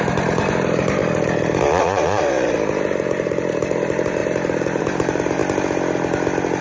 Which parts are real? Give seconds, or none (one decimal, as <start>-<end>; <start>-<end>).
1.0-1.8; 5.4-6.6